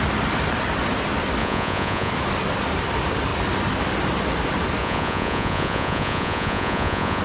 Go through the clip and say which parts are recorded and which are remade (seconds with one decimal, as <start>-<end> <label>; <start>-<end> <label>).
0.0-1.4 recorded; 1.4-2.1 remade; 2.1-4.8 recorded; 4.8-7.2 remade